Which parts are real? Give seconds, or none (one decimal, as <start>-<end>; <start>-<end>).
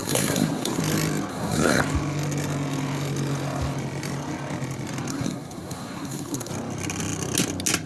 0.8-1.3; 1.8-5.1; 6.5-7.9